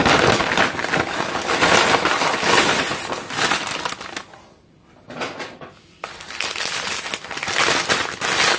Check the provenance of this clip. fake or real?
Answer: real